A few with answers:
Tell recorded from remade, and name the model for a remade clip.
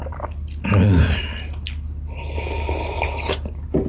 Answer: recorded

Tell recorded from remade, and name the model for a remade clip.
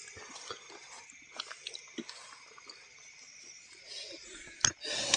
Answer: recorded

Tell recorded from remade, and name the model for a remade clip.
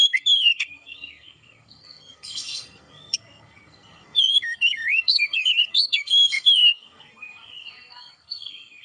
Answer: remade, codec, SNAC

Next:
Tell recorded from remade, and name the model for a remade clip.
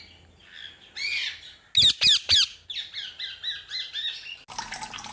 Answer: recorded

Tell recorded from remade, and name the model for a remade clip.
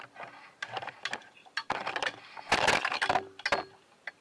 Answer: recorded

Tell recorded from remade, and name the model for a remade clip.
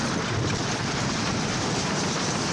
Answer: recorded